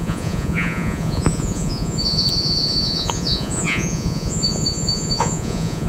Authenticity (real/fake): fake